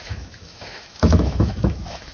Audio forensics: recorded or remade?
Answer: remade